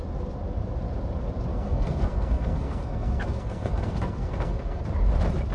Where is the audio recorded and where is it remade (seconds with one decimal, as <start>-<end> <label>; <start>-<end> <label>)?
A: 0.0-1.5 recorded; 1.5-4.8 remade; 4.8-5.5 recorded

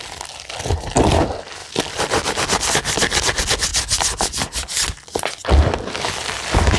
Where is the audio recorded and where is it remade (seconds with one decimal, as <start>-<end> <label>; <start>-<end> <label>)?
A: 0.0-6.8 recorded

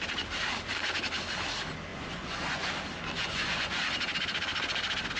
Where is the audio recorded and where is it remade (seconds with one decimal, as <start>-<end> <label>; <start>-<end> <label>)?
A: 0.0-1.9 recorded; 1.9-2.7 remade; 2.7-3.2 recorded; 3.2-3.8 remade; 3.8-5.2 recorded

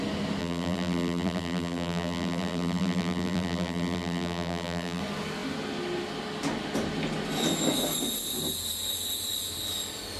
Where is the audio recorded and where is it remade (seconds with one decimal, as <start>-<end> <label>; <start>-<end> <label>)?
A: 0.0-0.4 recorded; 0.4-5.0 remade; 5.0-10.2 recorded

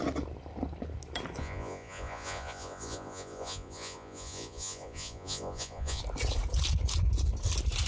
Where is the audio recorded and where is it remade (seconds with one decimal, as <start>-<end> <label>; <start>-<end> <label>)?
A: 0.0-1.4 recorded; 1.4-6.0 remade; 6.0-7.9 recorded

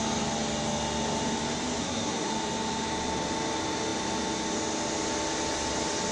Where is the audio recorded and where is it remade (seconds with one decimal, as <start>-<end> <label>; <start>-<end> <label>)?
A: 0.0-1.8 recorded; 1.8-2.3 remade; 2.3-6.1 recorded